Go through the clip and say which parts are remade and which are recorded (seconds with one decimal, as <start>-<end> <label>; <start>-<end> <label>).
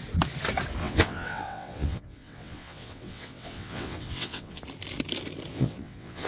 0.0-0.8 recorded; 0.8-4.6 remade; 4.6-5.5 recorded; 5.5-6.3 remade